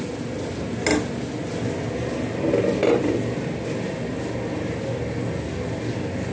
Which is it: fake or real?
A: real